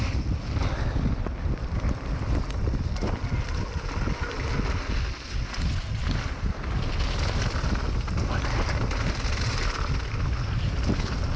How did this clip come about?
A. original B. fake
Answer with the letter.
A